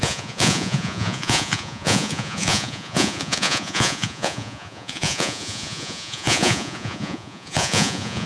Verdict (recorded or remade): remade